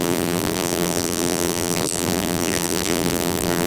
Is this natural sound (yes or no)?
no